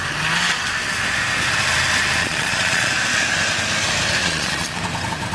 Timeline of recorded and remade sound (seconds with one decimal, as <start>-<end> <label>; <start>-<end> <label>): 0.0-2.2 recorded; 2.2-2.9 remade; 2.9-4.2 recorded; 4.2-4.8 remade; 4.8-5.3 recorded